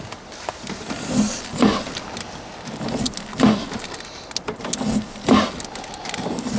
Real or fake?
real